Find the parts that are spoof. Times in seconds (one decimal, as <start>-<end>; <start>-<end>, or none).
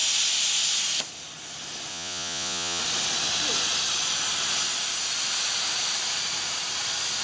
1.9-2.8